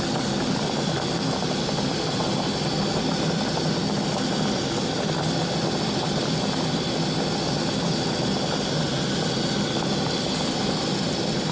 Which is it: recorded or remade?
recorded